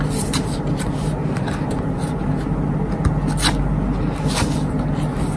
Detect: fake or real real